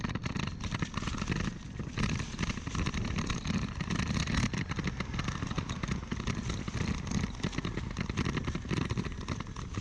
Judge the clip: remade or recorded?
recorded